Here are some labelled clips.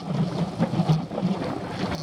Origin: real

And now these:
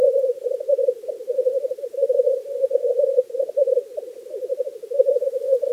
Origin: real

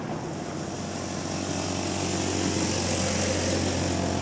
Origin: real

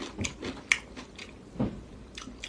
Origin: real